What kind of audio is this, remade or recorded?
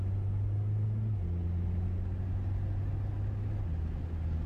recorded